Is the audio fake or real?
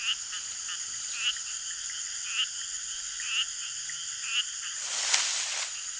real